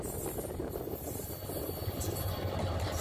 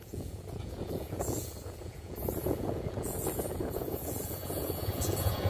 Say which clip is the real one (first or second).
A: first